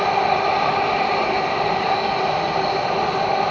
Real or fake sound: real